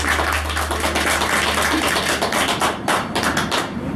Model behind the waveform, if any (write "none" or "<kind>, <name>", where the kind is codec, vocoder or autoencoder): none